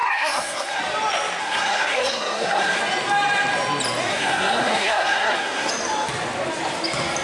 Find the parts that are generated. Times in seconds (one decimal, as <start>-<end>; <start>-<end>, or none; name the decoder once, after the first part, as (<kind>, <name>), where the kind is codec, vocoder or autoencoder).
0.0-0.8 (codec, SNAC); 1.4-2.8; 4.1-5.7